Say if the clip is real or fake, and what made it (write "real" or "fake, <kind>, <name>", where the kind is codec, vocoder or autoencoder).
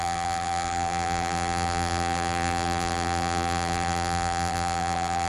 fake, vocoder, BigVGAN v2